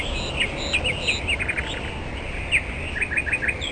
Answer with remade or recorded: recorded